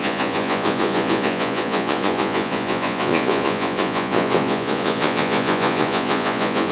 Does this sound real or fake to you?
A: fake